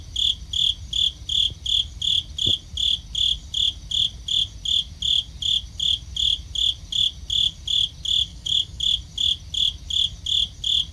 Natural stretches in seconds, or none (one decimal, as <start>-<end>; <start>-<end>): 0.0-8.3; 8.8-10.9